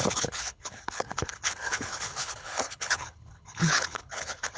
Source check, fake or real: fake